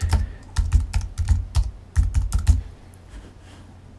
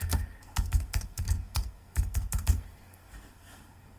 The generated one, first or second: second